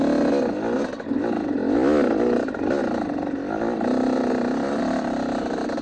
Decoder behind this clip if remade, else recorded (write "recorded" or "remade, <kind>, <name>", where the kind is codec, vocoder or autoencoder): recorded